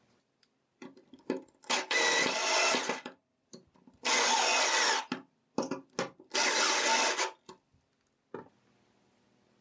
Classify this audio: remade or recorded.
recorded